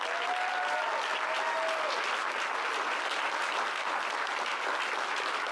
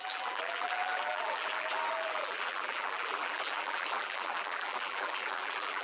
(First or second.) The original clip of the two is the first